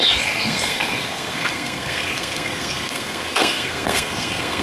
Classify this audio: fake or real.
fake